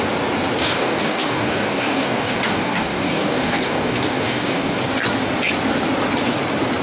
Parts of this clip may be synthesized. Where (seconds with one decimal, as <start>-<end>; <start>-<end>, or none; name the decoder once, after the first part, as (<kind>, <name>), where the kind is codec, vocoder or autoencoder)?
0.6-4.7 (codec, DAC)